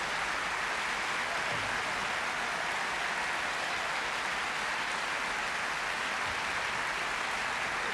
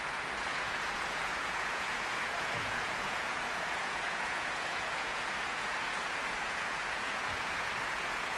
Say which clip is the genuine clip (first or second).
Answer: first